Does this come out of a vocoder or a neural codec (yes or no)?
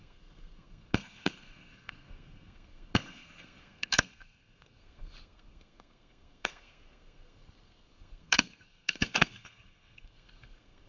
yes